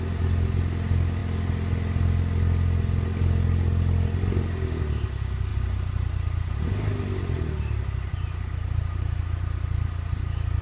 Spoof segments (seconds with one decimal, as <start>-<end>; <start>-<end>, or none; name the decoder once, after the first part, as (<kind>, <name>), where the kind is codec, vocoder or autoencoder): none